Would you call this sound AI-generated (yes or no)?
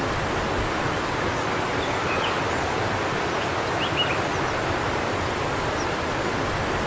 no